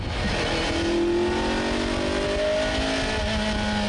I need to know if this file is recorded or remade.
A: recorded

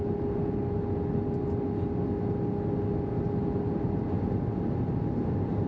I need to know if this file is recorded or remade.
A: recorded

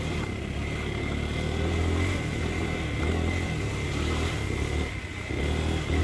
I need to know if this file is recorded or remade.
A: recorded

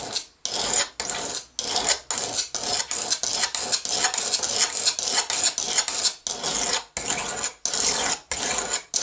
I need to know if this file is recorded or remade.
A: recorded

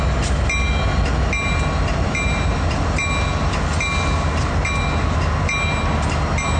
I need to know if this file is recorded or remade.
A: recorded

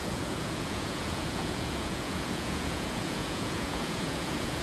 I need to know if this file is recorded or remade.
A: remade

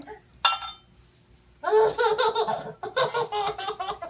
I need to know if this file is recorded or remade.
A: recorded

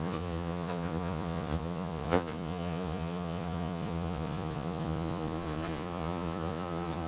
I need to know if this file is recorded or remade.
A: remade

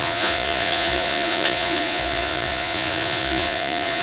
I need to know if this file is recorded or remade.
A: remade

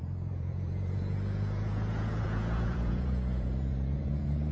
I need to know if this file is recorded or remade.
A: remade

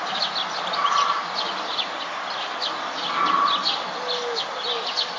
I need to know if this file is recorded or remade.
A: recorded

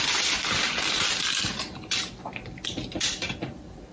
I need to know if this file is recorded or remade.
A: recorded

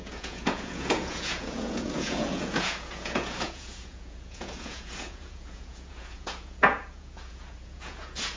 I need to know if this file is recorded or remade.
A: remade